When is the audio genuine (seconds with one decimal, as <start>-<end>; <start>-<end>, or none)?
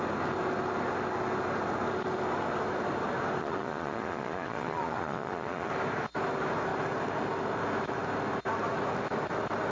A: 0.0-3.4; 5.7-9.7